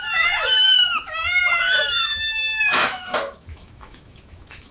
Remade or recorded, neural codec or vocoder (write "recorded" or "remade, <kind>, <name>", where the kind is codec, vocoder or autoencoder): remade, autoencoder, DAC-VAE